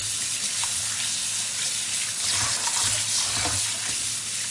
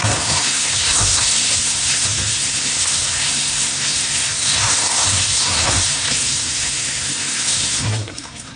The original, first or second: first